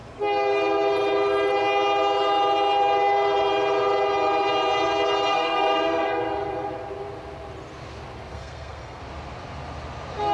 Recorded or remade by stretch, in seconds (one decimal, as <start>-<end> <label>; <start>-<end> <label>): 0.0-5.3 recorded; 5.3-6.2 remade; 6.2-8.3 recorded; 8.3-9.0 remade; 9.0-10.3 recorded